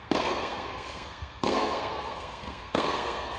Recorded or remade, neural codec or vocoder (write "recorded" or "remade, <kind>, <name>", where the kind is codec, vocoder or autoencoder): remade, codec, SNAC